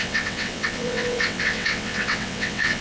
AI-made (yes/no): yes